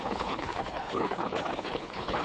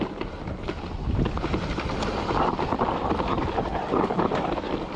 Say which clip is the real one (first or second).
second